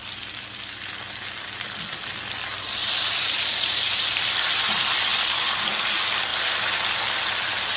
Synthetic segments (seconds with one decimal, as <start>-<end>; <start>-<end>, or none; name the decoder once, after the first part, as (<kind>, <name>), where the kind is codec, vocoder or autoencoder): 2.8-4.3 (vocoder, BigVGAN v2)